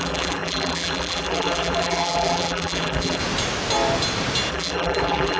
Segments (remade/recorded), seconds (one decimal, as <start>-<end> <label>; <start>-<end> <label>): 0.0-3.2 remade; 3.2-4.5 recorded; 4.5-5.4 remade

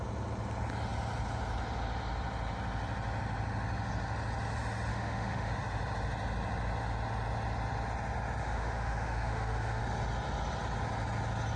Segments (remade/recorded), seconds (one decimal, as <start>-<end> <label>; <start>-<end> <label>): 0.0-4.9 recorded; 4.9-5.5 remade; 5.5-8.4 recorded; 8.4-9.8 remade; 9.8-11.6 recorded

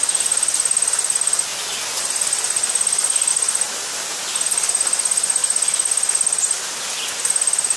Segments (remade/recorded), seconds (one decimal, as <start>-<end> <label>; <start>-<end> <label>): 0.0-7.8 recorded

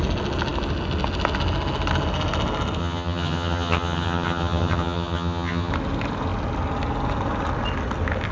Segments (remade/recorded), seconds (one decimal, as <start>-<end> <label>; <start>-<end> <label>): 0.0-2.8 recorded; 2.8-5.7 remade; 5.7-8.3 recorded

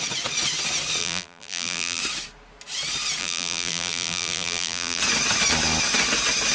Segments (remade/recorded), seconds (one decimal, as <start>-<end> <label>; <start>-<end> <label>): 0.0-1.0 recorded; 1.0-2.0 remade; 2.0-3.2 recorded; 3.2-5.0 remade; 5.0-6.5 recorded

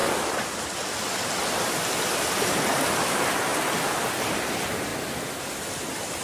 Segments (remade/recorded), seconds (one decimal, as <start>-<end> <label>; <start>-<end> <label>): 0.0-0.6 recorded; 0.6-3.5 remade; 3.5-4.2 recorded; 4.2-4.9 remade; 4.9-5.4 recorded; 5.4-6.2 remade

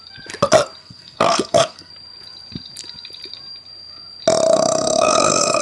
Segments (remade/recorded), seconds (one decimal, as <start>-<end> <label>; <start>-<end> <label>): 0.0-0.8 recorded; 0.8-1.9 remade; 1.9-4.5 recorded; 4.5-5.6 remade